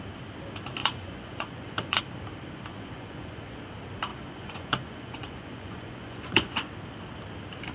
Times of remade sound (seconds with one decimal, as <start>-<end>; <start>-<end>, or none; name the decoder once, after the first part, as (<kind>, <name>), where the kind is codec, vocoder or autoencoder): 0.8-2.0 (vocoder, Vocos); 2.7-3.6; 4.1-6.7